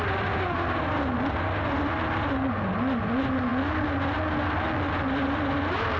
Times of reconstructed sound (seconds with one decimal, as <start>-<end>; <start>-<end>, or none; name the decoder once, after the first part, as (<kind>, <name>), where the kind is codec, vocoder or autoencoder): none